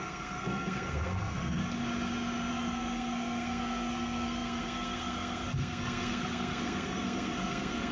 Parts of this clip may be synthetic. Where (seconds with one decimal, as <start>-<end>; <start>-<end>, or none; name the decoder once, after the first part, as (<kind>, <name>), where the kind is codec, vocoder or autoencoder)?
0.0-1.6 (codec, SNAC); 2.5-7.9